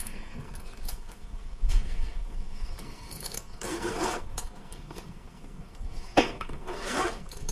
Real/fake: fake